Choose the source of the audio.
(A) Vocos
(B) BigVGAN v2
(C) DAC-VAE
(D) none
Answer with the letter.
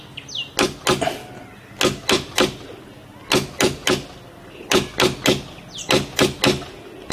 D